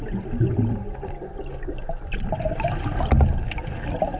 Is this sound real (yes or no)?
yes